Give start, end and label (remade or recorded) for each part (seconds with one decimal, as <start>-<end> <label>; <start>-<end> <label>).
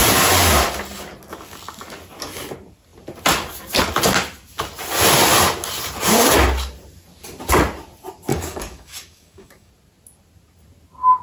0.0-8.3 recorded; 8.3-9.7 remade; 9.7-11.2 recorded